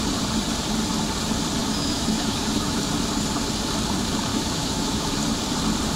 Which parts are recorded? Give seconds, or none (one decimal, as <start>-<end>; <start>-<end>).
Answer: 0.0-1.6; 2.8-4.3; 5.1-6.0